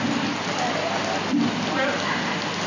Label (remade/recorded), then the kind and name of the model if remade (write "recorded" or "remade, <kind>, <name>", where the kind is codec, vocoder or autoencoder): recorded